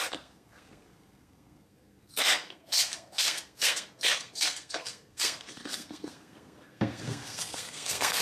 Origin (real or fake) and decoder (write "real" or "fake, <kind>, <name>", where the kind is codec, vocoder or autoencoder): fake, codec, SNAC